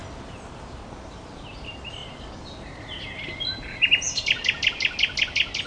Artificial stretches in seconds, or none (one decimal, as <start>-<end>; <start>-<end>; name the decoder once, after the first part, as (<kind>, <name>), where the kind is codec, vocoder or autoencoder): none